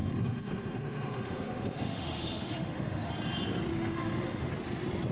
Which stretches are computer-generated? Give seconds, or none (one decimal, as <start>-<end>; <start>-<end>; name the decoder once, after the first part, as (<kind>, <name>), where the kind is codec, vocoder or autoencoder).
0.0-3.1 (autoencoder, DAC-VAE); 3.7-4.5